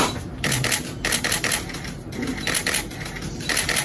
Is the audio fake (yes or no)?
no